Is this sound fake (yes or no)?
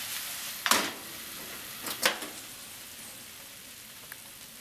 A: no